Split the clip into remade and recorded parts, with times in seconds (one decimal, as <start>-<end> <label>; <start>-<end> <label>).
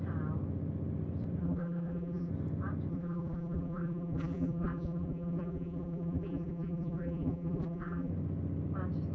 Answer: 0.0-1.4 recorded; 1.4-2.3 remade; 2.3-2.9 recorded; 2.9-8.1 remade; 8.1-9.1 recorded